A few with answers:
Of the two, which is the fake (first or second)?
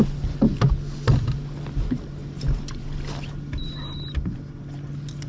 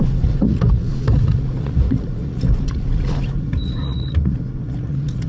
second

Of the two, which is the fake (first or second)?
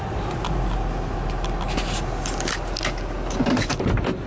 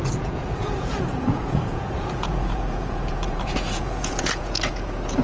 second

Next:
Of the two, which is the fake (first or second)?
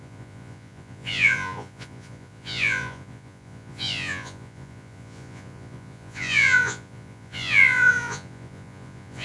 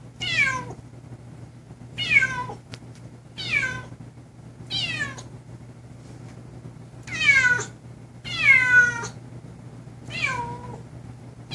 first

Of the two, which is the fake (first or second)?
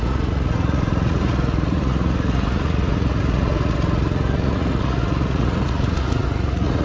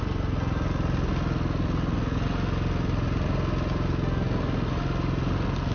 first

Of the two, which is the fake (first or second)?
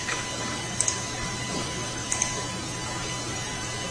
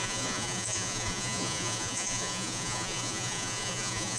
second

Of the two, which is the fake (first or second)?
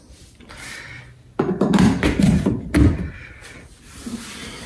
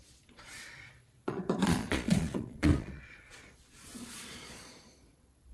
second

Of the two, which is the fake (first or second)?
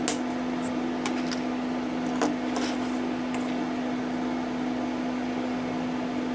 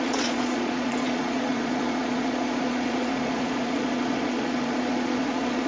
second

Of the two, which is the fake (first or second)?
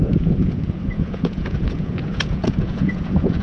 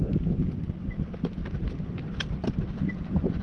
first